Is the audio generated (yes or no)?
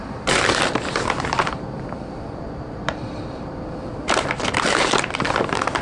yes